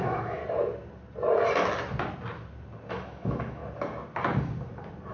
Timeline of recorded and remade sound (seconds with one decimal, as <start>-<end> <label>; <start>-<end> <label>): 0.0-0.4 remade; 0.4-2.9 recorded; 2.9-3.6 remade; 3.6-5.1 recorded